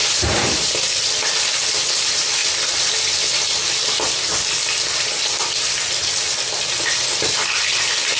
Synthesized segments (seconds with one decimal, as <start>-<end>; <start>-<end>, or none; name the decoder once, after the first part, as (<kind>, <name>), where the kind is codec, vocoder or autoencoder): 0.0-0.7 (vocoder, BigVGAN v2)